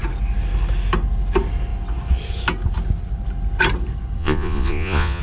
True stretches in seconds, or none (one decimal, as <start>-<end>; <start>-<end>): 0.0-4.2